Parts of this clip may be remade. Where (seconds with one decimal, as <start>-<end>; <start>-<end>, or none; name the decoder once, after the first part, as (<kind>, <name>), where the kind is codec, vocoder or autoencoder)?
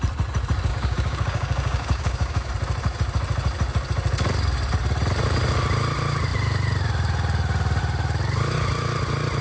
0.7-2.5 (codec, DAC)